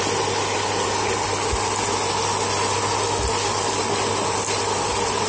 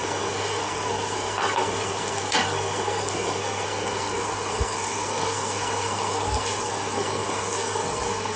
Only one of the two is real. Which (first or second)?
first